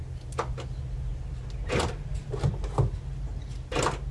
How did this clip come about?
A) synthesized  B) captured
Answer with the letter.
B